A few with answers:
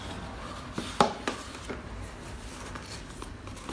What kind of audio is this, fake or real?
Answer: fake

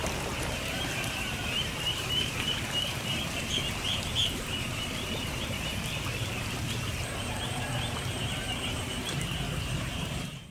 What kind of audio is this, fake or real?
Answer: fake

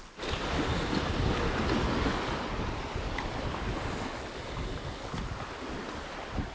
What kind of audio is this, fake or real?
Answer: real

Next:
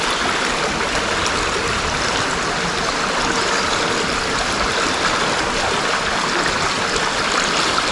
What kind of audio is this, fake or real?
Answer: real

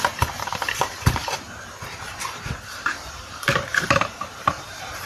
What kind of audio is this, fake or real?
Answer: fake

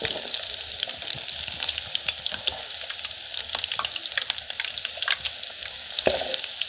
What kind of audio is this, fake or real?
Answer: real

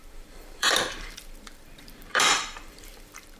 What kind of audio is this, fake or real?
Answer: fake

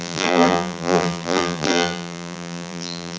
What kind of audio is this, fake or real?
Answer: fake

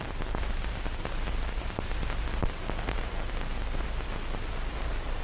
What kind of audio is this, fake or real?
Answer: real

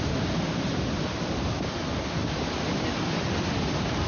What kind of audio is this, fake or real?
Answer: real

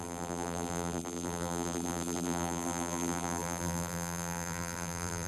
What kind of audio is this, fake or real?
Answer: fake